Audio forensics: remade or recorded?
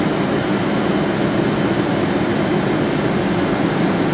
recorded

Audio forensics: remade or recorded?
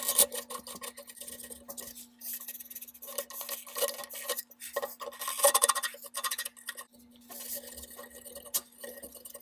recorded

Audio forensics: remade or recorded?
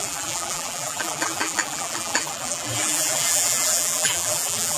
remade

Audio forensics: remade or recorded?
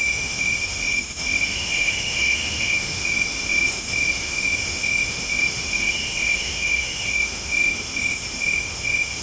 remade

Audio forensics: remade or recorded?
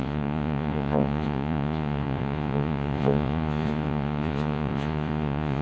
remade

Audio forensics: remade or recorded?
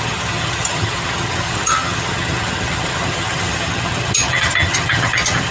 remade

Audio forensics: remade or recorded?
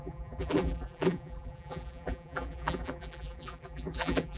remade